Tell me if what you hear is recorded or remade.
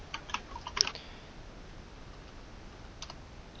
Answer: recorded